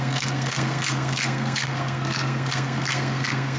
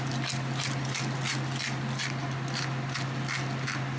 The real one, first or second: second